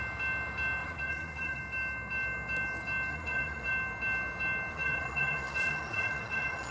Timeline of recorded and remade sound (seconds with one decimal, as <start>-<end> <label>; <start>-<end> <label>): 0.0-0.8 recorded; 0.8-1.6 remade; 1.6-3.1 recorded; 3.1-3.7 remade; 3.7-4.7 recorded; 4.7-6.7 remade